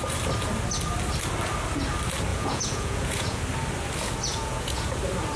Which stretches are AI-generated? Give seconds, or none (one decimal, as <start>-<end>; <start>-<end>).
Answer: 2.3-3.4; 4.3-4.9